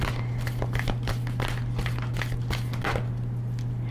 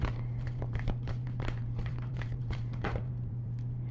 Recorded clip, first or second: first